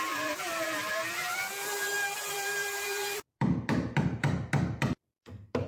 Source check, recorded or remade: remade